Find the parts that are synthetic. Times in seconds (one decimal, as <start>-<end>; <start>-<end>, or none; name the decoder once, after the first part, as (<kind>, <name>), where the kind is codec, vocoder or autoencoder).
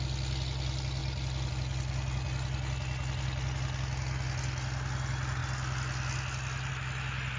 none